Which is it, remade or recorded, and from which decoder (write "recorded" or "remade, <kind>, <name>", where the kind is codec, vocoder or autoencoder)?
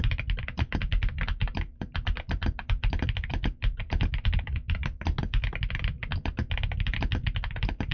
recorded